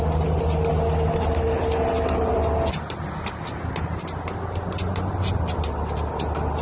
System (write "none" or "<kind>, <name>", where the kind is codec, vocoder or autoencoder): none